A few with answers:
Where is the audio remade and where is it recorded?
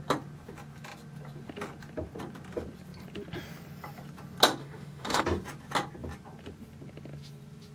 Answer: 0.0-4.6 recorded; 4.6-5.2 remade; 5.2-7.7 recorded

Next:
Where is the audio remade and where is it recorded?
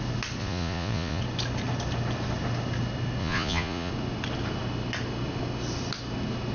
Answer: 0.0-0.4 recorded; 0.4-1.2 remade; 1.2-3.2 recorded; 3.2-3.9 remade; 3.9-6.5 recorded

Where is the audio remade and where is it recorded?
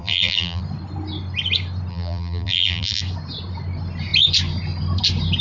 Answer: 0.0-0.6 remade; 0.6-1.9 recorded; 1.9-3.0 remade; 3.0-5.4 recorded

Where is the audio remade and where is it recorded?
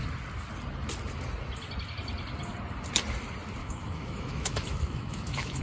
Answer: 0.0-3.6 recorded; 3.6-5.6 remade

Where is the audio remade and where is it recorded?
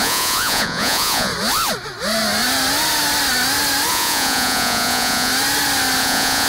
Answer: 0.0-1.3 remade; 1.3-3.9 recorded; 3.9-5.3 remade; 5.3-6.0 recorded; 6.0-6.5 remade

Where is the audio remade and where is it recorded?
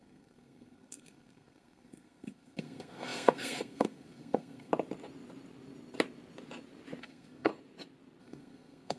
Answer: 0.0-4.7 remade; 4.7-7.0 recorded; 7.0-7.5 remade; 7.5-8.2 recorded; 8.2-9.0 remade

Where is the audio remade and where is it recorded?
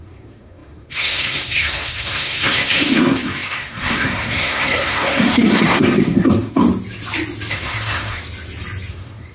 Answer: 0.0-6.6 remade; 6.6-7.5 recorded; 7.5-8.2 remade; 8.2-8.9 recorded; 8.9-9.3 remade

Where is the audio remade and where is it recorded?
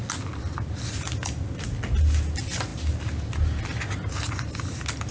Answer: 0.0-5.1 recorded